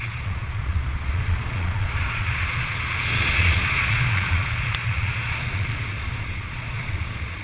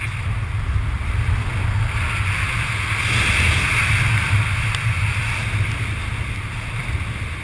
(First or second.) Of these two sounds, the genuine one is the second